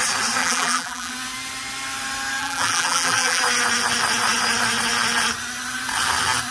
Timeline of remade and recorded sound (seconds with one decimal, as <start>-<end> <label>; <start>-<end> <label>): 0.0-0.4 recorded; 0.4-1.1 remade; 1.1-2.4 recorded; 2.4-3.4 remade; 3.4-6.5 recorded